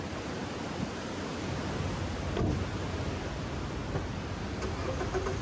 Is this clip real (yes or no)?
yes